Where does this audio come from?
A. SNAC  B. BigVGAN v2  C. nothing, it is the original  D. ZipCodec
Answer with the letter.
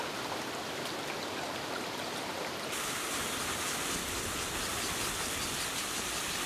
C